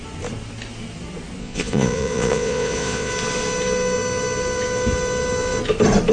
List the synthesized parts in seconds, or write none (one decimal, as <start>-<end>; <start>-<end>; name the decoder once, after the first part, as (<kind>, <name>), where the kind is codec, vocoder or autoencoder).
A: 1.4-3.1 (vocoder, Vocos)